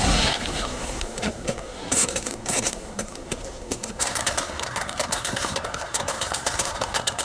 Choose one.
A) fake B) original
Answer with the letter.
A